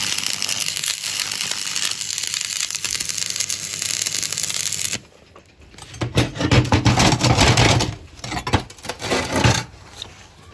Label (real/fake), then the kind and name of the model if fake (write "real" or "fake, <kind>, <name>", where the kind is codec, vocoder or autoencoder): real